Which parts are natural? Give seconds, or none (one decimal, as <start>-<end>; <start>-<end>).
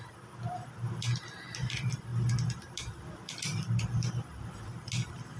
0.0-5.4